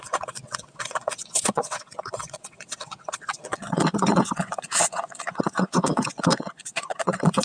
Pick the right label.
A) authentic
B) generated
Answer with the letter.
B